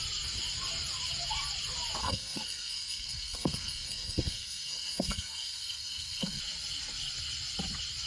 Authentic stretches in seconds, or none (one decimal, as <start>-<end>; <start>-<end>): 0.0-2.0; 6.4-8.1